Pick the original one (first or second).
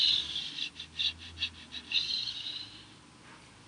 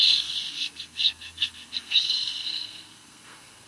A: first